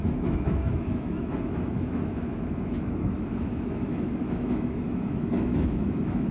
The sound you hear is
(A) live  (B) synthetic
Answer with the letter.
B